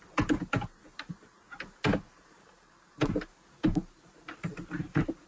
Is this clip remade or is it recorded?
recorded